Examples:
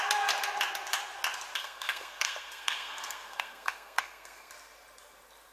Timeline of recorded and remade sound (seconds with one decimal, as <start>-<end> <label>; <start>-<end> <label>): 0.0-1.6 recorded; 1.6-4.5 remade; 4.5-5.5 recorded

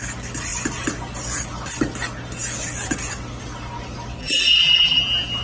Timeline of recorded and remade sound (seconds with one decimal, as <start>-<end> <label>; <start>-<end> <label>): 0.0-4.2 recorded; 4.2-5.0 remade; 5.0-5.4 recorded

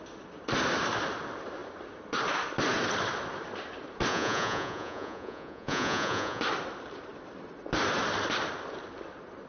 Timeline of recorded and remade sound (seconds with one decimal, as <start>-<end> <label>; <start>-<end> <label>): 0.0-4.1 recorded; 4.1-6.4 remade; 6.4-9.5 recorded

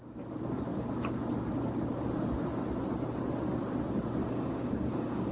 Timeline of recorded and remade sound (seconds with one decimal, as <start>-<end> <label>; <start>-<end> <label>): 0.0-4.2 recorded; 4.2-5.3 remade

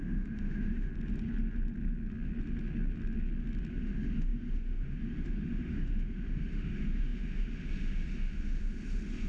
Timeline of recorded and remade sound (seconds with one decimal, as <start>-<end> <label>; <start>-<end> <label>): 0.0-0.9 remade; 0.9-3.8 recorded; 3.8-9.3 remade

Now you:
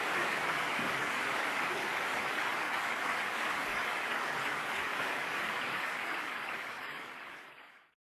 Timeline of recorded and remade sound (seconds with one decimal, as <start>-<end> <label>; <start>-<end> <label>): 0.0-8.2 remade

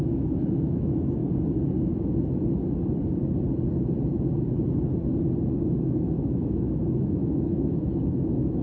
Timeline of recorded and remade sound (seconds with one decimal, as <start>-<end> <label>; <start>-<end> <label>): 0.0-1.2 remade; 1.2-5.8 recorded; 5.8-8.6 remade